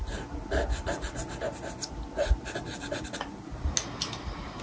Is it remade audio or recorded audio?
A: recorded